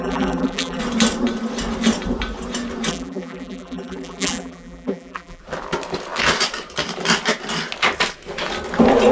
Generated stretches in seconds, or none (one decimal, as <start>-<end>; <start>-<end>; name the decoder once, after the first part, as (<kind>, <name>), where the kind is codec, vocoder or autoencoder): 0.0-0.8 (vocoder, BigVGAN v2); 2.9-5.4

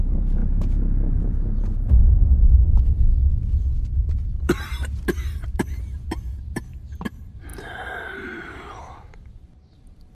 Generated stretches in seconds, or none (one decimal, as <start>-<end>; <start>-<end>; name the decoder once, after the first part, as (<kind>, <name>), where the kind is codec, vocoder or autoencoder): 0.0-10.1 (vocoder, BigVGAN v2)

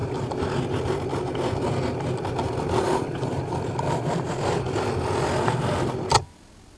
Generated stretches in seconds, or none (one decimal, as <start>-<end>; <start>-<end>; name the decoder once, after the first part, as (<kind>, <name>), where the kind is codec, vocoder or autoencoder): 2.8-3.4 (vocoder, BigVGAN v2)

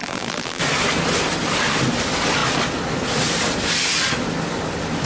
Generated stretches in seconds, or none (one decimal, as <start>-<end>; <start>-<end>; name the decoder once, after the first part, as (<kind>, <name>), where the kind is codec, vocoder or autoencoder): 0.0-0.6 (vocoder, BigVGAN v2)

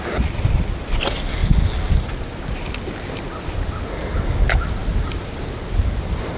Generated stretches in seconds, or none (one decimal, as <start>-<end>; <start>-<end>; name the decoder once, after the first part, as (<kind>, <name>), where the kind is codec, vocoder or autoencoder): 4.8-6.4 (vocoder, BigVGAN v2)

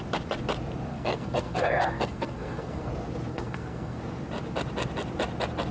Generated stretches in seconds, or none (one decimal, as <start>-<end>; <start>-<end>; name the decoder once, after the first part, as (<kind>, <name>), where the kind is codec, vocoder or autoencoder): 0.9-2.9 (codec, SNAC); 3.3-4.0

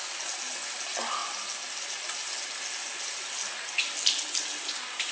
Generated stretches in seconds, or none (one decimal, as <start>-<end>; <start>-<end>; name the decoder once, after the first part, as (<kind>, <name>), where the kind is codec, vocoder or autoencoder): none

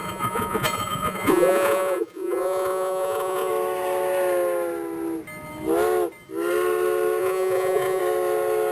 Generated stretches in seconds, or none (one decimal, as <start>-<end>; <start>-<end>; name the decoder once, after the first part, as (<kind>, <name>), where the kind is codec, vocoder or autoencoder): 0.0-3.5 (vocoder, Vocos); 7.2-8.0